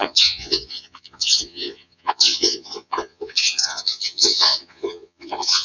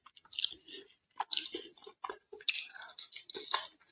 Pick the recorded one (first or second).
second